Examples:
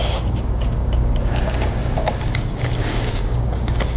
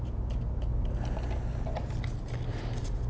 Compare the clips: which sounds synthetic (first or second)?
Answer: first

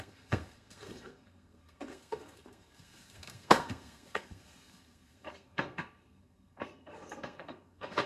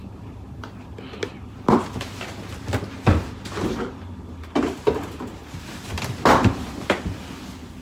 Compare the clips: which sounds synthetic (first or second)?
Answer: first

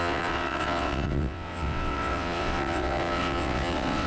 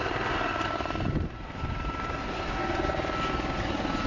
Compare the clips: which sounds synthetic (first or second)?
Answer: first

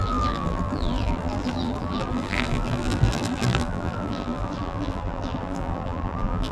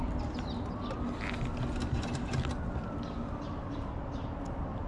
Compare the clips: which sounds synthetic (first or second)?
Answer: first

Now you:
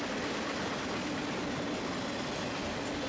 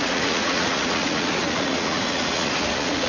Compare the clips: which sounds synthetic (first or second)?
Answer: second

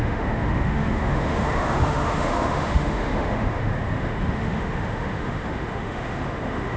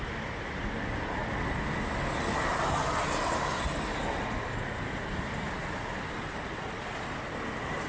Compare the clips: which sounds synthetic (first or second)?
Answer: first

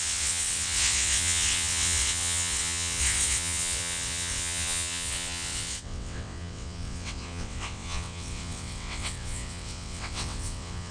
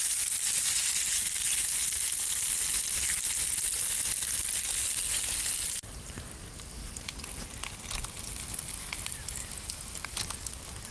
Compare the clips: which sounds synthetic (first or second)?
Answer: first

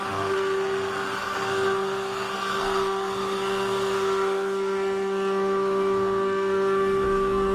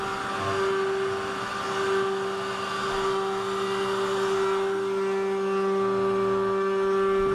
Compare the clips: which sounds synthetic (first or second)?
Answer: first